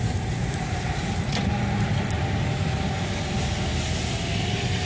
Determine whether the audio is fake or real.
real